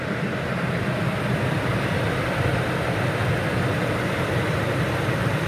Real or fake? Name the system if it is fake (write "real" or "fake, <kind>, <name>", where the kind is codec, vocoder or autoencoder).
real